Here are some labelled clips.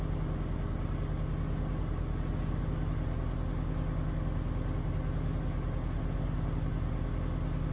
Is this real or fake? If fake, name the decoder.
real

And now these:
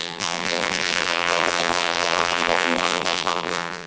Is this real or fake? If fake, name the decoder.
fake, vocoder, BigVGAN v2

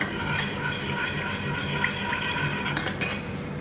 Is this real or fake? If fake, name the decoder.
real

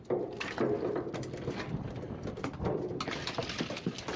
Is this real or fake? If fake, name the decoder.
real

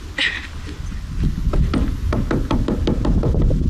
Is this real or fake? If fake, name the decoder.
real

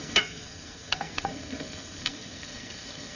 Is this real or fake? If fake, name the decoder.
fake, codec, SNAC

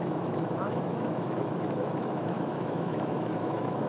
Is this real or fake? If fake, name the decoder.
fake, autoencoder, DAC-VAE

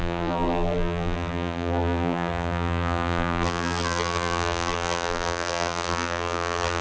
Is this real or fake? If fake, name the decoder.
fake, vocoder, BigVGAN v2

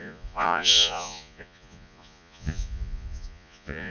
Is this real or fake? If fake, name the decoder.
fake, vocoder, Vocos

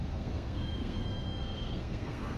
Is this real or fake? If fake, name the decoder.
fake, codec, SNAC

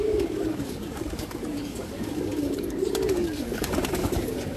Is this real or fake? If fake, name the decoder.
fake, codec, DAC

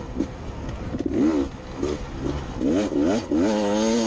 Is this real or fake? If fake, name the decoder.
real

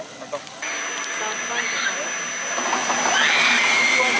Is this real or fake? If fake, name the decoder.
real